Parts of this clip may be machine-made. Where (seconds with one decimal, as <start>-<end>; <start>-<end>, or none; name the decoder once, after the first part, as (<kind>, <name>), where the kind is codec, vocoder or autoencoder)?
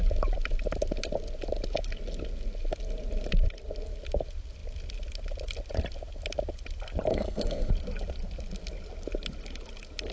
7.1-7.7 (codec, SNAC)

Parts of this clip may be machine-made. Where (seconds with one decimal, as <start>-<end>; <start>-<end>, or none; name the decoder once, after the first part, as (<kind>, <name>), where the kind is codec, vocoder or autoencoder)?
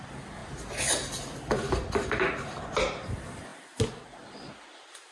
none